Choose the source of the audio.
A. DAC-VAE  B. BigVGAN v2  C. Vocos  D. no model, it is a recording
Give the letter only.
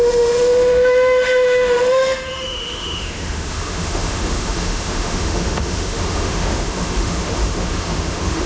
A